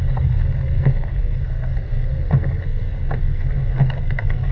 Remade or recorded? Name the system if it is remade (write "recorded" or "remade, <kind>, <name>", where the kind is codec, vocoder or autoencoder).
remade, codec, SNAC